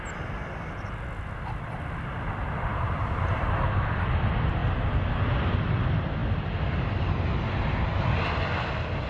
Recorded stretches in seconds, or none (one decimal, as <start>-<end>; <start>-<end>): 0.0-2.7; 3.6-9.1